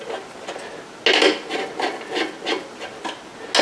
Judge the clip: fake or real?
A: real